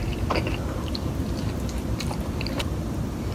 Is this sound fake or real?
fake